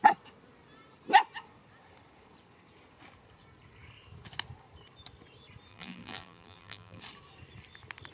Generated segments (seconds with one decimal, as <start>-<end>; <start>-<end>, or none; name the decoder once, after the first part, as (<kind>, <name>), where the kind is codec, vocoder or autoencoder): 5.7-7.0 (vocoder, BigVGAN v2)